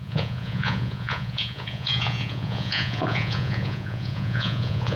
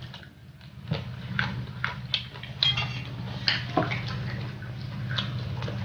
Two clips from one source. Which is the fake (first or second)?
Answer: first